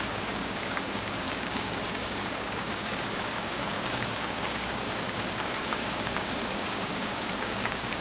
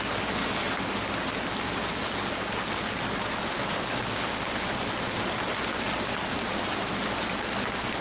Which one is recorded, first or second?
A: second